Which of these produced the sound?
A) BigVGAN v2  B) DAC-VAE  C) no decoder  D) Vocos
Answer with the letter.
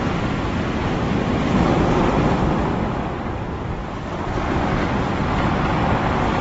A